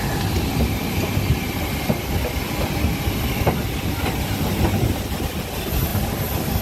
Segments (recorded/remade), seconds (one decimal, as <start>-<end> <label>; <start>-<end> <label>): 0.0-6.6 recorded